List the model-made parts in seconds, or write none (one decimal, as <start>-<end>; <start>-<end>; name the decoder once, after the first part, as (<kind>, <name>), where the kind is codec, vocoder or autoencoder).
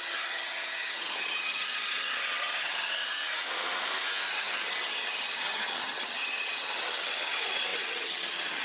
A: 0.0-3.2 (vocoder, HiFi-GAN); 4.3-8.6